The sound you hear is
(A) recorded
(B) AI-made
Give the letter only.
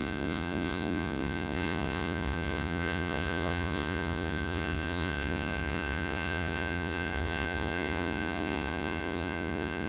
B